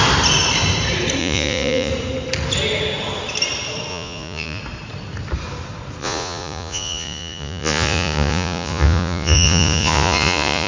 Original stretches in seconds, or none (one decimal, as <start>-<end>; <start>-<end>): 0.0-1.2; 1.9-3.9; 4.6-6.0